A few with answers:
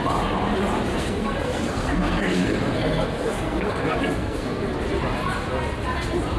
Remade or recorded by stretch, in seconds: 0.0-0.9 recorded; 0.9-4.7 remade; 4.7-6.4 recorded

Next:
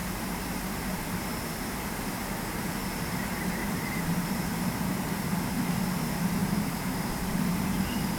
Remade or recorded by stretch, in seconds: 0.0-1.0 remade; 1.0-3.6 recorded; 3.6-5.4 remade; 5.4-6.4 recorded; 6.4-7.4 remade; 7.4-8.2 recorded

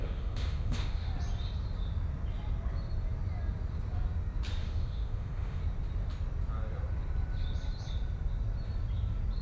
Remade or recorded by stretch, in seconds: 0.0-1.1 remade; 1.1-4.6 recorded; 4.6-5.6 remade; 5.6-9.4 recorded

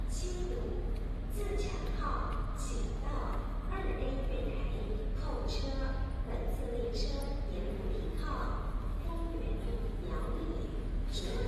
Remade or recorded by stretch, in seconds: 0.0-10.7 recorded; 10.7-11.5 remade

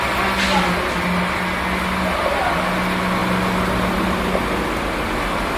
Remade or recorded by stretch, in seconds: 0.0-5.6 recorded

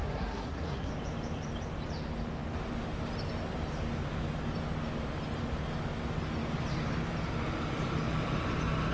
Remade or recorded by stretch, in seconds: 0.0-0.9 remade; 0.9-8.9 recorded

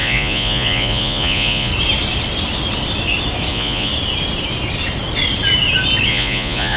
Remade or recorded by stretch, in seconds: 0.0-1.7 remade; 1.7-3.5 recorded; 3.5-3.9 remade; 3.9-6.1 recorded; 6.1-6.8 remade

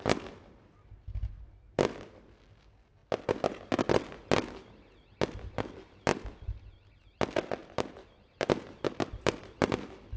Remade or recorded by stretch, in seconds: 0.0-7.6 recorded; 7.6-9.4 remade; 9.4-10.2 recorded